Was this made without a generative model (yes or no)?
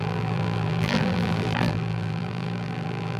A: no